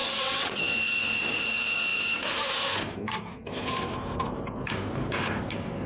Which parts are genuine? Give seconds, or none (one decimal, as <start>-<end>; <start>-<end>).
0.6-5.9